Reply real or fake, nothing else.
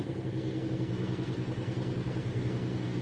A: fake